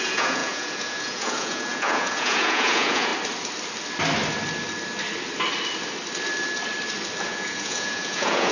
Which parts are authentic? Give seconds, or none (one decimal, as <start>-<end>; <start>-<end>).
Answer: 3.1-7.2